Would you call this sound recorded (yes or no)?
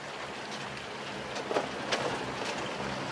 yes